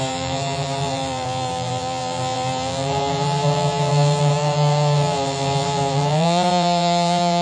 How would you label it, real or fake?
fake